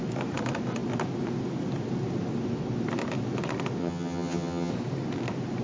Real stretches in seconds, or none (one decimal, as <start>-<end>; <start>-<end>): 0.0-3.8; 4.7-5.6